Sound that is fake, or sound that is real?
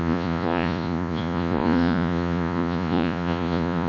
fake